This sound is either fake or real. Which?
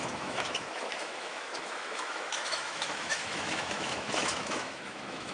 fake